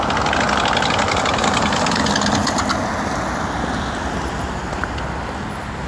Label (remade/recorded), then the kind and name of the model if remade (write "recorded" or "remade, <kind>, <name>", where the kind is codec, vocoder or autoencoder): recorded